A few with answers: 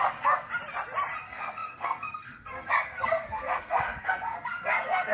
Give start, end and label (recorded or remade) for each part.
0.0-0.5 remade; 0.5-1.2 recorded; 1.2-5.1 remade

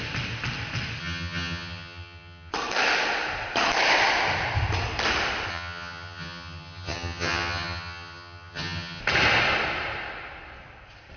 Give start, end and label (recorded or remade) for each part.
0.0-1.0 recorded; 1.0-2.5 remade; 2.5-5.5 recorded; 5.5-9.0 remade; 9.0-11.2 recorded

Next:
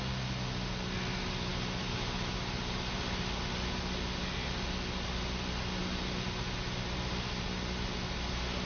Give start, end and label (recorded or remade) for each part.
0.0-8.7 recorded

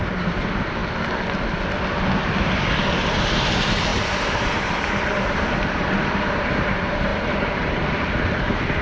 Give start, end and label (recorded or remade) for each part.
0.0-0.8 remade; 0.8-3.2 recorded; 3.2-8.8 remade

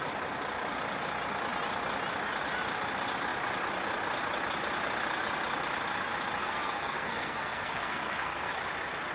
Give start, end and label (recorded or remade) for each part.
0.0-6.4 recorded; 6.4-8.5 remade; 8.5-9.1 recorded

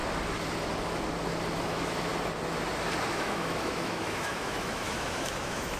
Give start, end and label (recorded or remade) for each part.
0.0-1.6 recorded; 1.6-2.1 remade; 2.1-3.1 recorded; 3.1-5.8 remade